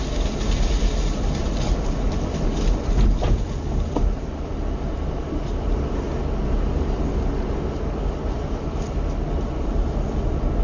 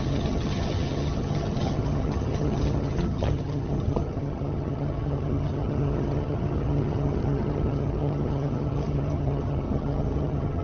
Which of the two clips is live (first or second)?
first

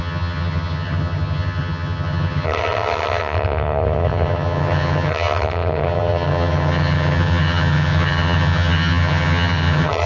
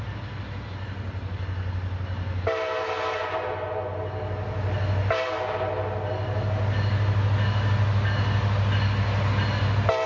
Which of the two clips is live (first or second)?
second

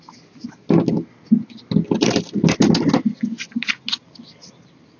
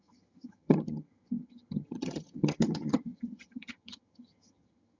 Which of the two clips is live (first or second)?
first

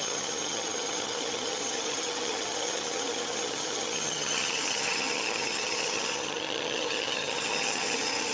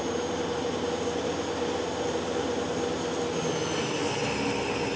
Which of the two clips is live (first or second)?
second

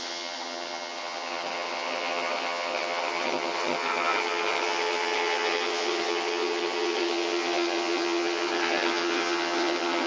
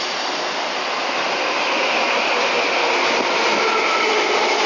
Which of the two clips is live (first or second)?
second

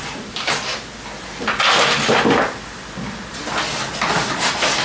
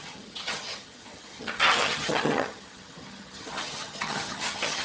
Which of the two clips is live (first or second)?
first